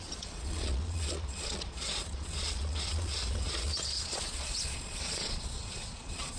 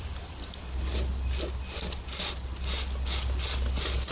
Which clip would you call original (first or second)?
second